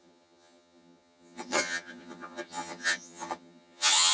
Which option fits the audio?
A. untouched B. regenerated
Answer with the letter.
B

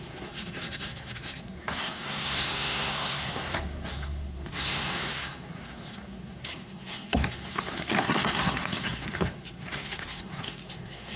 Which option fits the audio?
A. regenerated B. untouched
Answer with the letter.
A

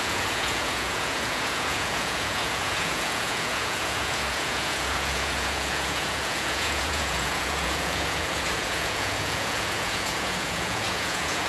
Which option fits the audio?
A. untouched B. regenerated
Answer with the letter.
B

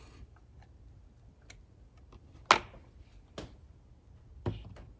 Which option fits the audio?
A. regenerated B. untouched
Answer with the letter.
B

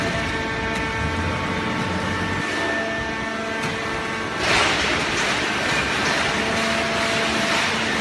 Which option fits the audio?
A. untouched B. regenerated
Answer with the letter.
A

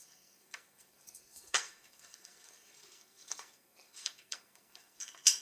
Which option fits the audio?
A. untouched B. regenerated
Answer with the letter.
B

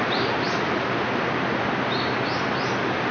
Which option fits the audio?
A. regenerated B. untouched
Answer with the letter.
B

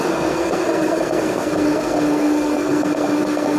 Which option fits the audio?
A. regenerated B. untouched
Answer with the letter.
A